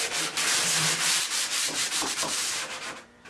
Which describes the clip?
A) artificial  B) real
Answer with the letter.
A